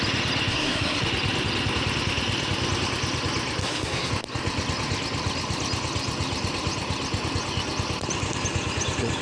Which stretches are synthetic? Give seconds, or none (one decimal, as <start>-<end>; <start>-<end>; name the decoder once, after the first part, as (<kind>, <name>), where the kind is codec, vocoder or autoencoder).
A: 0.5-1.0 (codec, SNAC); 3.6-4.1